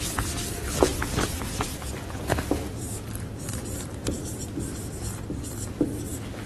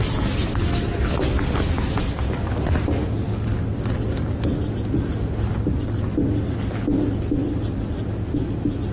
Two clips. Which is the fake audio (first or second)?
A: first